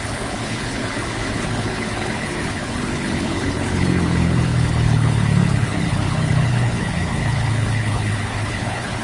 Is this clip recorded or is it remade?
remade